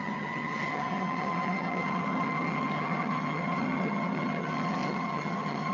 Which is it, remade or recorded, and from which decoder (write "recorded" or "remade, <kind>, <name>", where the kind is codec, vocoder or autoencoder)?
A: remade, vocoder, HiFi-GAN